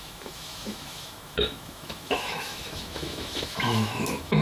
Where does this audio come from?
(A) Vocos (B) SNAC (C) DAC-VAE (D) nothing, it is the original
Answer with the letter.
C